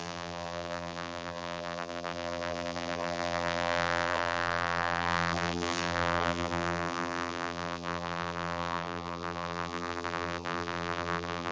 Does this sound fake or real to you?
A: fake